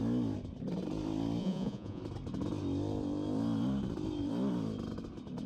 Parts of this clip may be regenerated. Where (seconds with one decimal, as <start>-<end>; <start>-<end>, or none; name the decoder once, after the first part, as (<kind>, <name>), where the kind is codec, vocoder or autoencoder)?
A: 1.4-2.0 (vocoder, Vocos)